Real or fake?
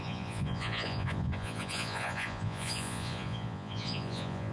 fake